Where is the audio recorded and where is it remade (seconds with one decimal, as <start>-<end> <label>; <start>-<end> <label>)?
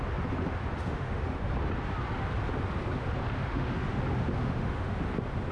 0.0-0.8 recorded; 0.8-1.5 remade; 1.5-3.4 recorded; 3.4-4.0 remade; 4.0-4.4 recorded; 4.4-5.0 remade; 5.0-5.5 recorded